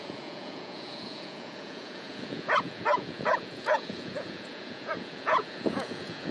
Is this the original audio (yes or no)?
no